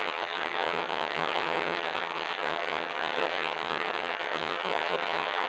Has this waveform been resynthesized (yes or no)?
yes